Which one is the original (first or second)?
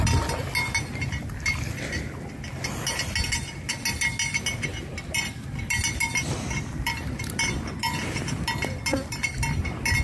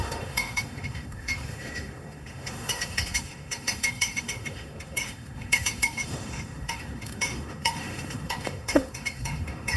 first